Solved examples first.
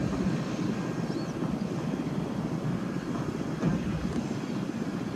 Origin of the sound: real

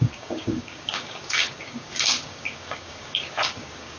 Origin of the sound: fake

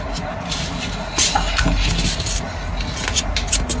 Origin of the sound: real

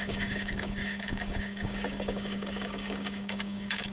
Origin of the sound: fake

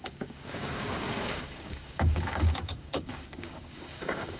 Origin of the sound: fake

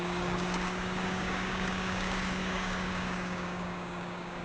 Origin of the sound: fake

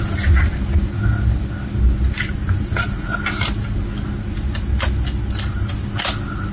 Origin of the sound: real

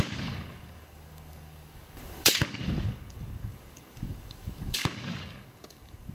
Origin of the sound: fake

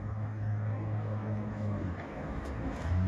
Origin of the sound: fake